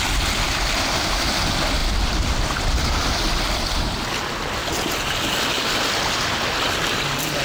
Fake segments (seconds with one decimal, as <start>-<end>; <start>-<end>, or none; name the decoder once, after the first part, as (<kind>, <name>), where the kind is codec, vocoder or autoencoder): none